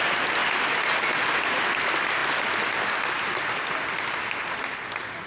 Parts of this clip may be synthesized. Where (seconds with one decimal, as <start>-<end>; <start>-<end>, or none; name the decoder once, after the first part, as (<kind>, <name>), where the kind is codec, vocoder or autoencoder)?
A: none